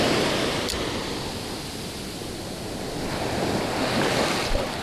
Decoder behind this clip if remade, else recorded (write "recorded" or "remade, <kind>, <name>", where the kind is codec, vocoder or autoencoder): recorded